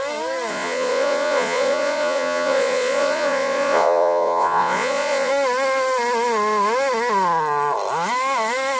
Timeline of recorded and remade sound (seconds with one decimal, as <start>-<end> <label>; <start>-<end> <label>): 0.0-0.5 recorded; 0.5-5.3 remade; 5.3-8.8 recorded